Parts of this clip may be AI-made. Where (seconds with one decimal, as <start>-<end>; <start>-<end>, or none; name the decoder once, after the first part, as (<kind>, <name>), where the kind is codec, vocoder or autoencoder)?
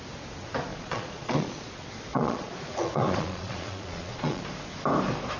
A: 0.7-1.7 (vocoder, Vocos); 2.1-4.4